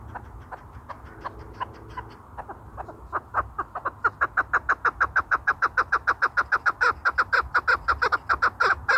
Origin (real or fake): real